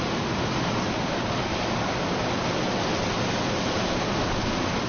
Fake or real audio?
real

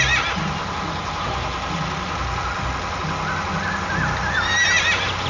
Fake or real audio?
real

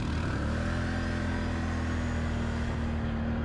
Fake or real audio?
real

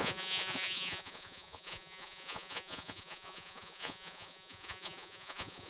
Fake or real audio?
fake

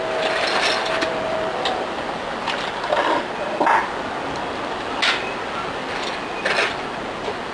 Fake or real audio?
real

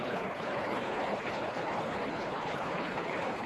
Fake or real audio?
fake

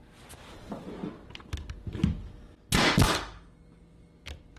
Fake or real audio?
real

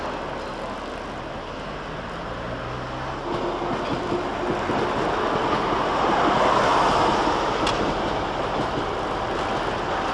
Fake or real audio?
real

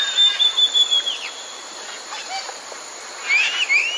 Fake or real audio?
real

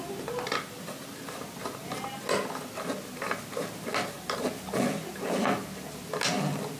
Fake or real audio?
real